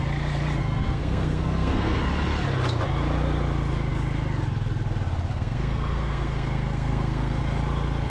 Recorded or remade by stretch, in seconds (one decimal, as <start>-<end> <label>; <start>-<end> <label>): 0.0-0.6 recorded; 0.6-2.0 remade; 2.0-5.3 recorded; 5.3-7.4 remade; 7.4-8.1 recorded